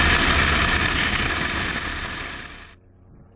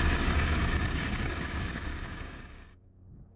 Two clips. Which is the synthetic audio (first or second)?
second